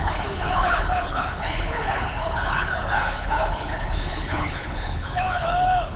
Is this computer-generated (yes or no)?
yes